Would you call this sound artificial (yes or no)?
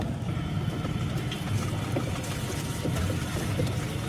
no